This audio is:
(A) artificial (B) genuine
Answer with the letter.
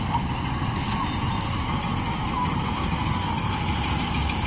B